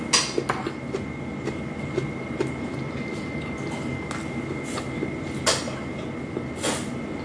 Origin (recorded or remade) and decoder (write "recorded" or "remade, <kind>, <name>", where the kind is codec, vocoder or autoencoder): recorded